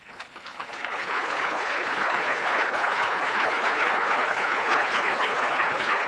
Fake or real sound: fake